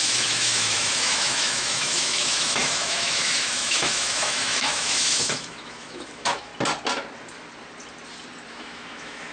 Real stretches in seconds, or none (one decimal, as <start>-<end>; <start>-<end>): 6.5-8.5